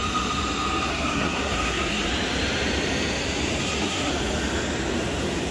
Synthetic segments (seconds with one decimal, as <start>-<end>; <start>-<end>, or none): 0.9-2.1; 3.6-4.1